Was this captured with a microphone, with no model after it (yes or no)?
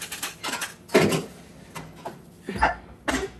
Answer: yes